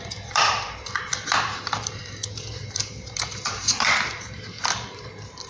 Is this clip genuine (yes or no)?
no